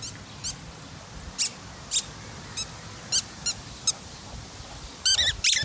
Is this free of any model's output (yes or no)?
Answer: yes